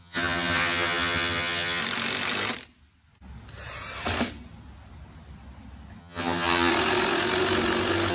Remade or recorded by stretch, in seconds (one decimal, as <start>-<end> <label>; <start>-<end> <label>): 0.0-1.8 remade; 1.8-6.0 recorded; 6.0-6.7 remade; 6.7-8.1 recorded